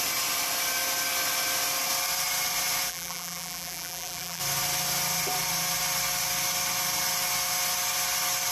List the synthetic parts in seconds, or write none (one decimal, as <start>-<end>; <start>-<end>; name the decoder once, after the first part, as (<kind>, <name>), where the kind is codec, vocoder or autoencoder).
2.9-4.4 (vocoder, BigVGAN v2)